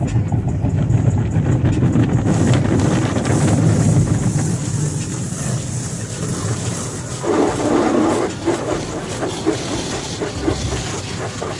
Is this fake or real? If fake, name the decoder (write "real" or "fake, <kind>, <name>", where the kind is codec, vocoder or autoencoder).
real